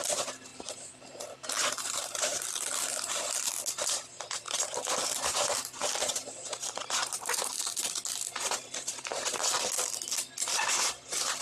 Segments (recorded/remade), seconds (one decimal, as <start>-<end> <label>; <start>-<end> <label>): 0.0-0.5 recorded; 0.5-2.4 remade; 2.4-5.8 recorded; 5.8-7.4 remade; 7.4-11.4 recorded